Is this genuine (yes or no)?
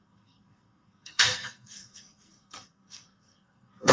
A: no